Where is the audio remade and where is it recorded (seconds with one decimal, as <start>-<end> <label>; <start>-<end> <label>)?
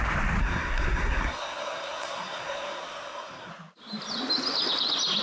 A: 0.0-0.4 recorded; 0.4-3.5 remade; 3.5-5.2 recorded